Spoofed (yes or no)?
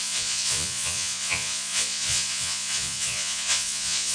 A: yes